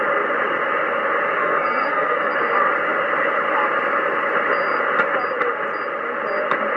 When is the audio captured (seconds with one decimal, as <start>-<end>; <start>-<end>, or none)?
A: 0.0-1.4; 2.3-6.8